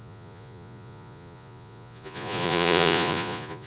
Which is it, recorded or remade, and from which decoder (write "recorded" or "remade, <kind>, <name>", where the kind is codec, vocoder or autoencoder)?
remade, vocoder, Vocos